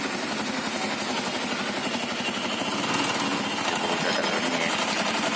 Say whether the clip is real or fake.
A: real